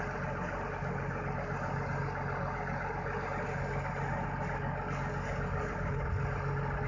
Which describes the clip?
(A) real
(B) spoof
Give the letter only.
A